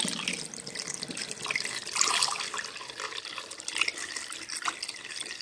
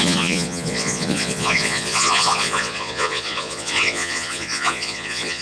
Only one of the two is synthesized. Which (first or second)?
second